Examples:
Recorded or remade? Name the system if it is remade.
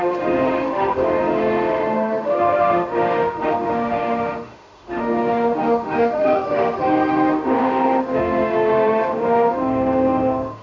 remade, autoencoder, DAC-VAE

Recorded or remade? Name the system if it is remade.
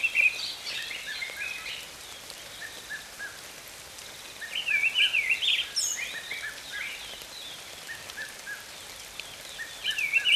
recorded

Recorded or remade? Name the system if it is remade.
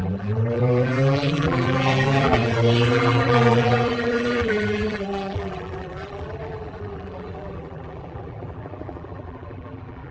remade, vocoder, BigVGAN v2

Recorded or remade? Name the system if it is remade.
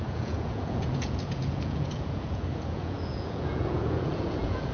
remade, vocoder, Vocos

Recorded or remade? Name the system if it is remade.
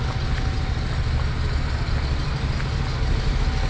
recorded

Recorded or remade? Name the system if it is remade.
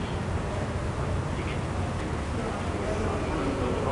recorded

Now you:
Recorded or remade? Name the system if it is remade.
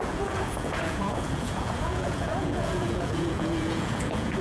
remade, vocoder, Vocos